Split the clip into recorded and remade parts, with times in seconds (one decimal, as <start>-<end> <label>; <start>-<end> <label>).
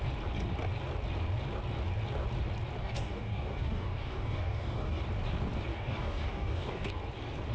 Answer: 0.0-2.8 recorded; 2.8-5.0 remade; 5.0-5.7 recorded; 5.7-6.9 remade; 6.9-7.5 recorded